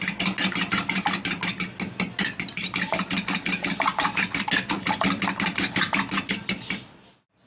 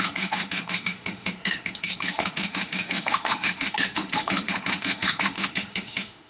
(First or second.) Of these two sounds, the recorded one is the first